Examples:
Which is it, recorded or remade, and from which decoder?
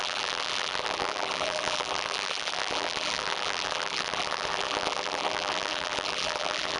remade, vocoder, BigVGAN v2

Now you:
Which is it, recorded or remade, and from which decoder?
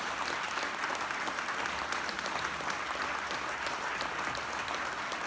recorded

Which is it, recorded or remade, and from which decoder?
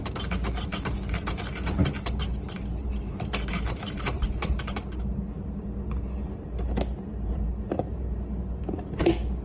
remade, vocoder, BigVGAN v2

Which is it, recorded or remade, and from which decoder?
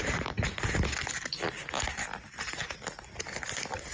recorded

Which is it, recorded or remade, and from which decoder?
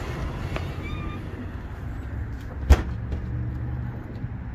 recorded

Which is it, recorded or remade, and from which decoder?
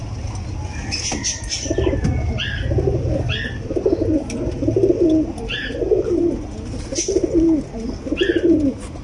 recorded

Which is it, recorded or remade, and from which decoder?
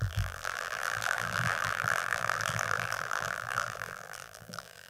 remade, vocoder, BigVGAN v2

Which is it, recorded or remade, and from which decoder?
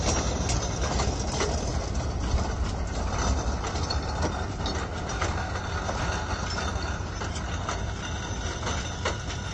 recorded